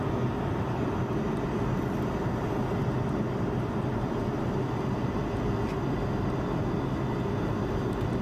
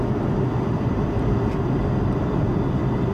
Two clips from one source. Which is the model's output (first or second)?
second